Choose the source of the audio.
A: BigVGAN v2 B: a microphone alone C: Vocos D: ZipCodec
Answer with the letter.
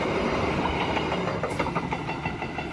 B